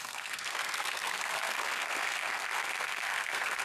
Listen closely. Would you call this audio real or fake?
fake